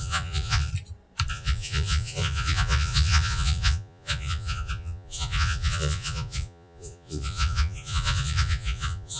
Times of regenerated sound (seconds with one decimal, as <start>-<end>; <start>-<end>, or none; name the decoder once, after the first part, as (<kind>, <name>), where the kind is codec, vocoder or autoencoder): 0.0-0.7 (vocoder, Vocos); 1.3-9.2